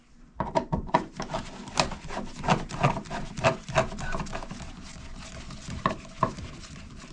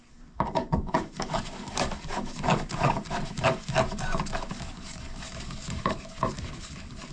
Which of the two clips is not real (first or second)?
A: second